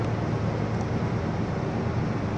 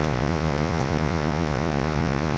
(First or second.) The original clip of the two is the first